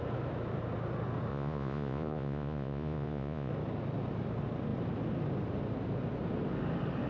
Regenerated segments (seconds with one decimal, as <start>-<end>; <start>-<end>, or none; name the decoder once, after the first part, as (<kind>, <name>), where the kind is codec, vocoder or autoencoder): 1.3-3.5 (vocoder, Vocos)